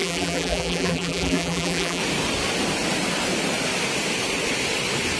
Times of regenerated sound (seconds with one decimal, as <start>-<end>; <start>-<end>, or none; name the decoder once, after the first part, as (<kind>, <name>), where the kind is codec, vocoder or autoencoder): 0.0-2.0 (vocoder, BigVGAN v2)